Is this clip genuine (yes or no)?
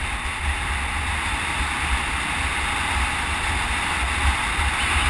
yes